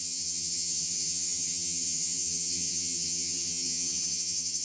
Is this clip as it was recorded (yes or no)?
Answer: no